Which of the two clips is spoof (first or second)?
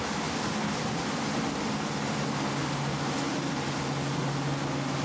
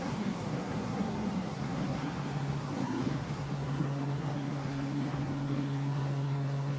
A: second